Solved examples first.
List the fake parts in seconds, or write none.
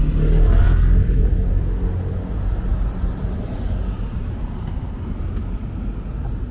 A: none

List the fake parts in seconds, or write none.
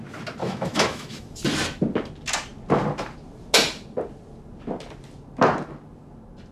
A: 0.4-1.4 (autoencoder, DAC-VAE)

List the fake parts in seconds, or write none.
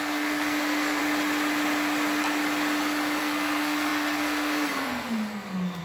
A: 0.0-1.0 (codec, SNAC); 3.2-5.8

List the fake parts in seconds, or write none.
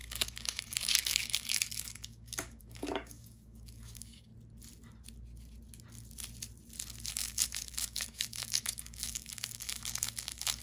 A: 0.0-4.3 (codec, DAC); 7.1-10.6